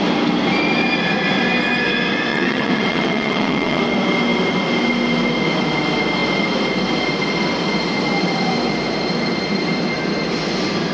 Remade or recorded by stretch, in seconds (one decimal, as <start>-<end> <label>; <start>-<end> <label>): 0.0-2.3 recorded; 2.3-3.8 remade; 3.8-10.9 recorded